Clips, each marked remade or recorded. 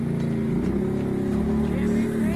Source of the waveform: recorded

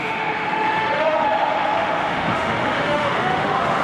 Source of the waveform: remade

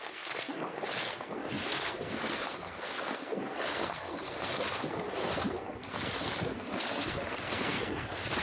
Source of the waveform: remade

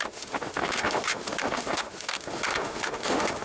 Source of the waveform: remade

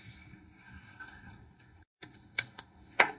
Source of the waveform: remade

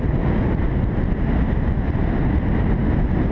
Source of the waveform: recorded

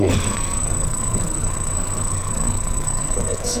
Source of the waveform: remade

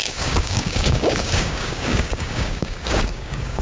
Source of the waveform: remade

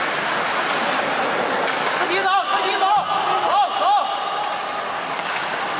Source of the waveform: recorded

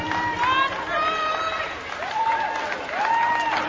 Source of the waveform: remade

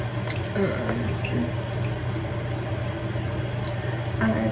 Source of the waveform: recorded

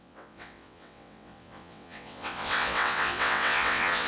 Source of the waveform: remade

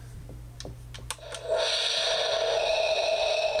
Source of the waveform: recorded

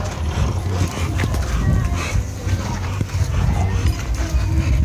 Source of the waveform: recorded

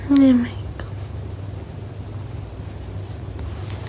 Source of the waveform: recorded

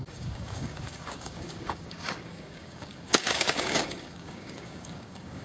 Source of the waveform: remade